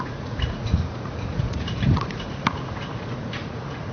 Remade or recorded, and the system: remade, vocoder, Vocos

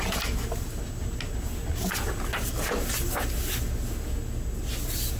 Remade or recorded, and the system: recorded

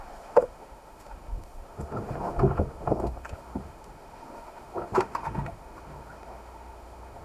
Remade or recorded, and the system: remade, autoencoder, DAC-VAE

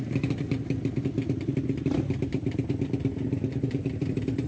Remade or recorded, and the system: remade, vocoder, BigVGAN v2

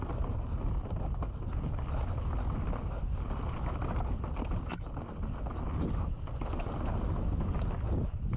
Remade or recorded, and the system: recorded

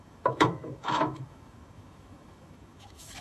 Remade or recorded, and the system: remade, autoencoder, DAC-VAE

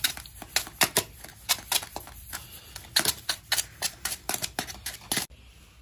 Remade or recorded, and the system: recorded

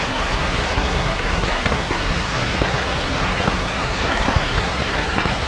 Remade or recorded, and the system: remade, codec, SNAC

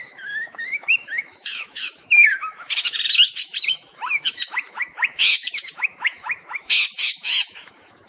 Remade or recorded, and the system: remade, autoencoder, DAC-VAE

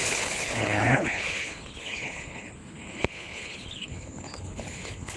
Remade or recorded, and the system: remade, codec, HILCodec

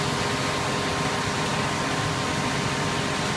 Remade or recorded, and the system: recorded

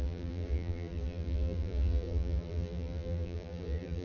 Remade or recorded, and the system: remade, vocoder, BigVGAN v2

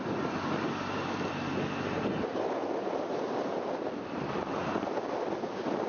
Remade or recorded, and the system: recorded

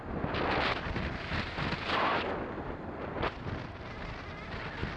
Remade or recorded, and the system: recorded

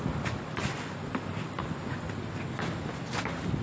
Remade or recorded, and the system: recorded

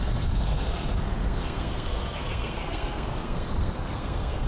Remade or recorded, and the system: remade, codec, SNAC